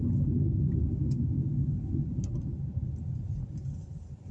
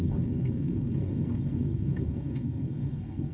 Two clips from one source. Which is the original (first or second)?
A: first